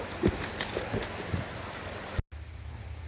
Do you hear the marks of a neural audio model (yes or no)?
no